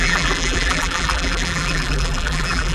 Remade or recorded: remade